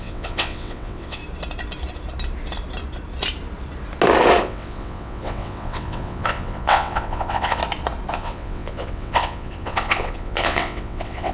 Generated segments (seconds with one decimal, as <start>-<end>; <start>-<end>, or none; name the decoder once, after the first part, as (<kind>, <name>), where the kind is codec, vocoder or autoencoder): 0.0-1.2 (vocoder, WaveNeXt); 4.4-7.6; 8.1-11.3